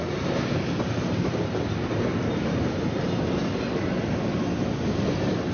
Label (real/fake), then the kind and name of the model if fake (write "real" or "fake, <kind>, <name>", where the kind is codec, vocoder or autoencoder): real